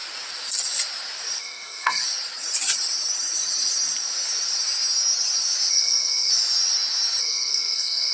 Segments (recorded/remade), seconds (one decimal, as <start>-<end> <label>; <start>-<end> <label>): 0.0-1.4 recorded; 1.4-2.0 remade; 2.0-5.7 recorded; 5.7-6.3 remade; 6.3-7.2 recorded; 7.2-8.1 remade